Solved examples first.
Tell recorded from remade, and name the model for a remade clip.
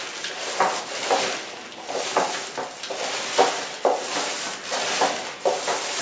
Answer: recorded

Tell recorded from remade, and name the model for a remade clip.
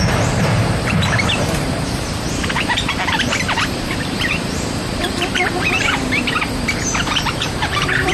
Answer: remade, vocoder, BigVGAN v2